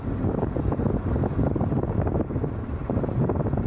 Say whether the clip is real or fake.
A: real